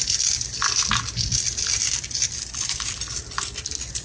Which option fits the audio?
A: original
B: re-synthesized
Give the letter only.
A